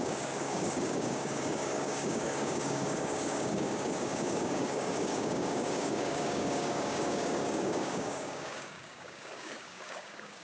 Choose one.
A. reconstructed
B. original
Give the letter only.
A